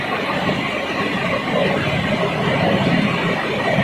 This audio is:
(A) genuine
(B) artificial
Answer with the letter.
A